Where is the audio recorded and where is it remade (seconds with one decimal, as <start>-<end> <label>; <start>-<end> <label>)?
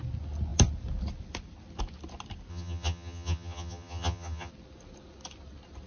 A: 0.0-2.5 recorded; 2.5-4.5 remade; 4.5-5.9 recorded